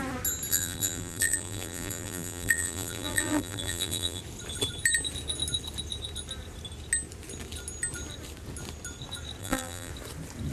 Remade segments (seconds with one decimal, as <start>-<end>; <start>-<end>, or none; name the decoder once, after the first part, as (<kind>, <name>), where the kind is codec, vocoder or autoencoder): 0.5-4.2 (vocoder, BigVGAN v2); 9.4-9.9